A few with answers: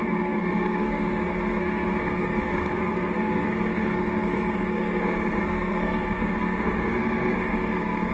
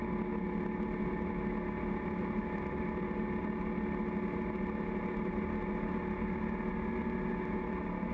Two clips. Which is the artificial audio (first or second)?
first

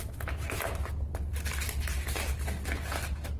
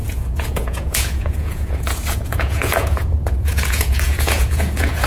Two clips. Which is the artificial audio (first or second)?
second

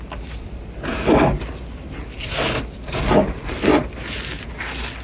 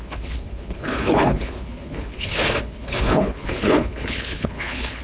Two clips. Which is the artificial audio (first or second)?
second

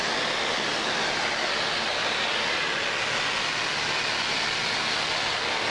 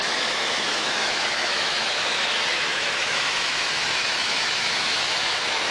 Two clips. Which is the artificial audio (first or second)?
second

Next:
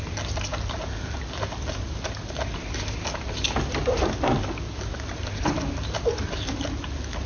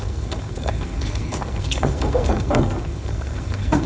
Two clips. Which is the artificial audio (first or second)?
second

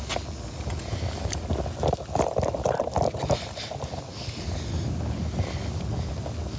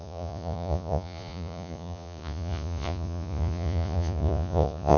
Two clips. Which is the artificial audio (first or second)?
second